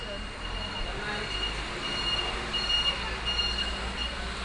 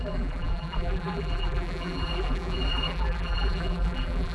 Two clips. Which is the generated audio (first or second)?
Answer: second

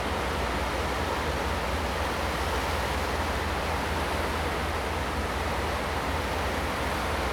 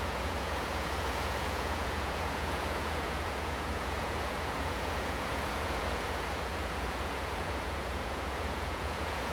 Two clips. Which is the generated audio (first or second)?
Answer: second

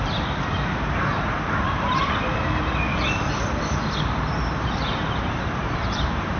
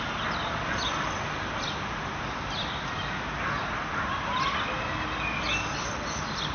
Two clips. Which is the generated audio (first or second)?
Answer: first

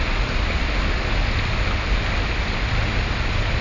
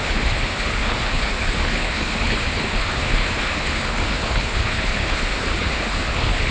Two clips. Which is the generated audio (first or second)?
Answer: second